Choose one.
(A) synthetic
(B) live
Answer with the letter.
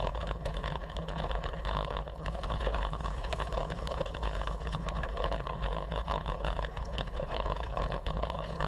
A